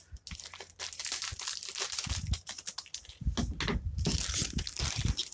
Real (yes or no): yes